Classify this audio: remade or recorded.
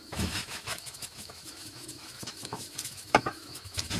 remade